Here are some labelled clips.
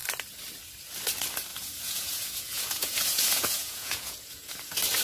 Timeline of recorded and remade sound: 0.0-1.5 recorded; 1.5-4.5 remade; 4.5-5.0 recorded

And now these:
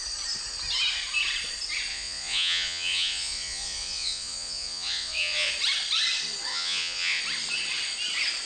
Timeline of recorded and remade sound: 0.0-1.9 recorded; 1.9-5.5 remade; 5.5-6.5 recorded; 6.5-7.2 remade; 7.2-8.5 recorded

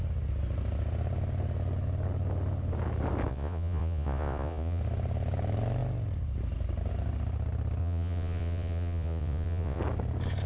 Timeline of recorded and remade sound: 0.0-3.3 recorded; 3.3-4.8 remade; 4.8-7.8 recorded; 7.8-9.8 remade; 9.8-10.5 recorded

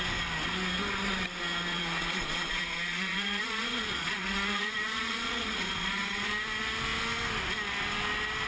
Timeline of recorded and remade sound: 0.0-1.7 recorded; 1.7-6.3 remade; 6.3-8.5 recorded

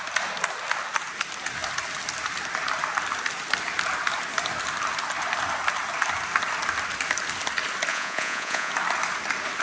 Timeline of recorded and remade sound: 0.0-7.9 recorded; 7.9-8.7 remade; 8.7-9.6 recorded

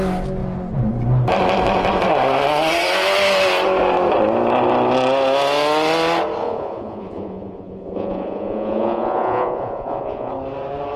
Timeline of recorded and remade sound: 0.0-6.4 recorded; 6.4-10.3 remade; 10.3-11.0 recorded

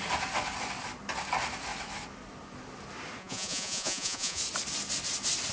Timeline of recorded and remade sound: 0.0-3.2 recorded; 3.2-4.4 remade; 4.4-5.5 recorded

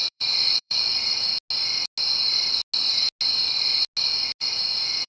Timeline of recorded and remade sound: 0.0-1.3 remade; 1.3-4.4 recorded; 4.4-5.1 remade